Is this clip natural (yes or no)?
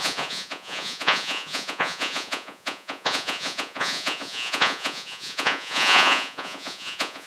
no